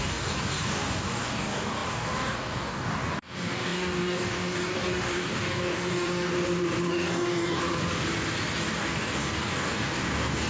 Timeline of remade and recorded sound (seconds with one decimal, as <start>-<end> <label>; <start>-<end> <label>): 0.0-6.3 remade; 6.3-6.9 recorded; 6.9-7.6 remade; 7.6-8.8 recorded; 8.8-10.5 remade